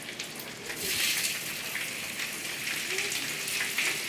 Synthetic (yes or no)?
no